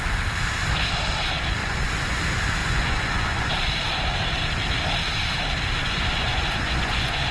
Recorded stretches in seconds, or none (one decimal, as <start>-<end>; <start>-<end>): 0.0-1.6; 2.2-2.6; 3.5-5.8